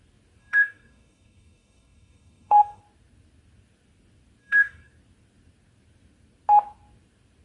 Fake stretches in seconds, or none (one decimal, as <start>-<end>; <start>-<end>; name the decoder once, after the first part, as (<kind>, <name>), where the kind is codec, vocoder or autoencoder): 0.4-2.8 (codec, DAC); 4.4-4.9